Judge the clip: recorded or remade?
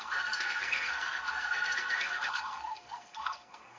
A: remade